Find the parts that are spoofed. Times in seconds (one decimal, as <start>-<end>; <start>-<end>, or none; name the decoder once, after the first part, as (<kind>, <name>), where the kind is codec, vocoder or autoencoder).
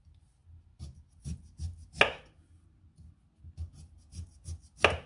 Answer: none